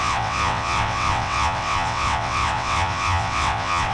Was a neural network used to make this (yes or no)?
yes